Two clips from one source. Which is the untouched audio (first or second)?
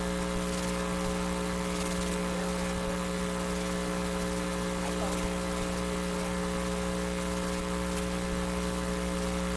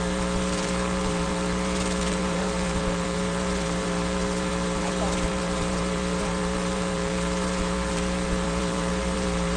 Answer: first